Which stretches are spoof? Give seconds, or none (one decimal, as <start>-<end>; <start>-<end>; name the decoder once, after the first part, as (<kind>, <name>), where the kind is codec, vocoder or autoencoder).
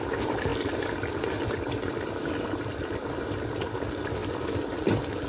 none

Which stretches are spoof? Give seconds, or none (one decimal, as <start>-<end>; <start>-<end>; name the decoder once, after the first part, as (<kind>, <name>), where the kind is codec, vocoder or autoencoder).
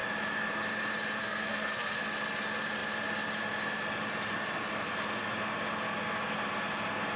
1.2-2.0 (codec, SNAC)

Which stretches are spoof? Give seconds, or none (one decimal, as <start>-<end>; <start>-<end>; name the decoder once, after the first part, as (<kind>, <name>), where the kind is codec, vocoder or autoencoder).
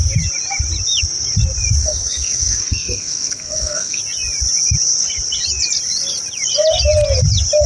1.8-4.0 (codec, SNAC)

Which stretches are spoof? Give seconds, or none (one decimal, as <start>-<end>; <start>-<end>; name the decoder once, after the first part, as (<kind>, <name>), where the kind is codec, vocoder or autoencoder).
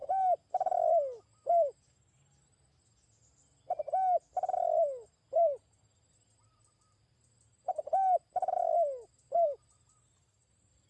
none